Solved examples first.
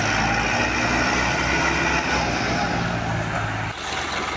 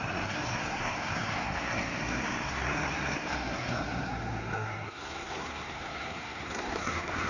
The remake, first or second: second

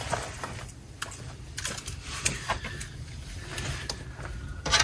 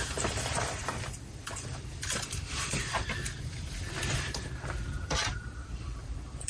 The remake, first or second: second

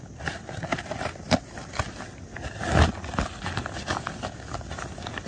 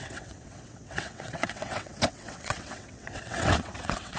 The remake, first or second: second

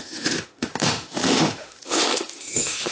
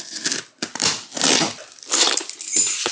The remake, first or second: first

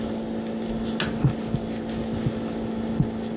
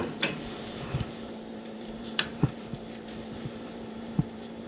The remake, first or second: second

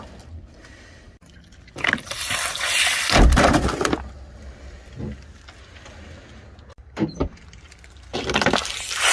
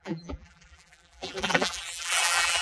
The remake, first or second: second